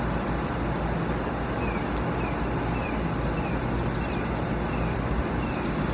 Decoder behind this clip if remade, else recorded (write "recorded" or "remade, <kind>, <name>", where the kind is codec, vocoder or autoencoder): recorded